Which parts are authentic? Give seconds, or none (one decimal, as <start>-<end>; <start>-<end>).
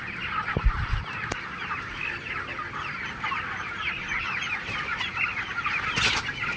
0.0-6.6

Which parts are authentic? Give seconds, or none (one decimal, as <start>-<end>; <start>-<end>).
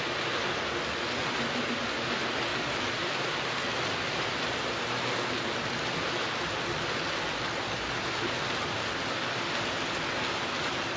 0.0-11.0